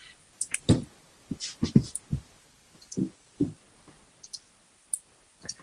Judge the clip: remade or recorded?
recorded